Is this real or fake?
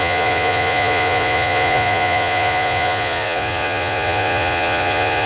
fake